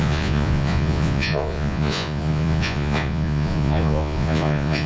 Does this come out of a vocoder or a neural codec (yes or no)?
yes